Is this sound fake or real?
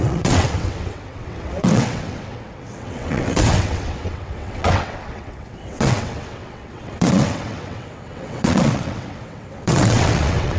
fake